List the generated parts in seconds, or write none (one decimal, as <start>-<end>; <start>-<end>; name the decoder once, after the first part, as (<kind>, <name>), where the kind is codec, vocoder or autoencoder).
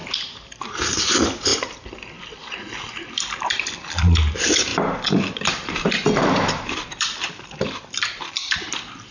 0.0-1.5 (vocoder, BigVGAN v2); 2.2-9.1